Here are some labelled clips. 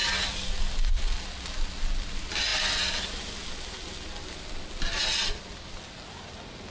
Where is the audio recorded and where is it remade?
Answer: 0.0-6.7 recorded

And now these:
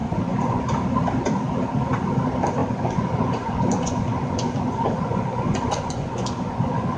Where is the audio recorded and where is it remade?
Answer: 0.0-0.6 remade; 0.6-2.6 recorded; 2.6-7.0 remade

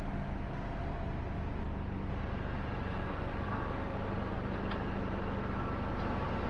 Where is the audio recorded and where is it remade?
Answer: 0.0-2.8 recorded; 2.8-3.5 remade; 3.5-6.5 recorded